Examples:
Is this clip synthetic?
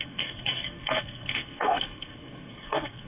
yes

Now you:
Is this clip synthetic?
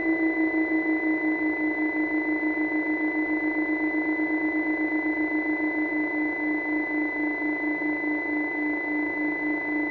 no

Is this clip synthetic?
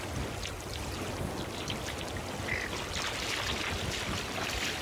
no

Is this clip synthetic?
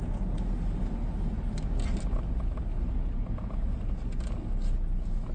no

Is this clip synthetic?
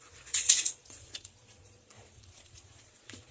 yes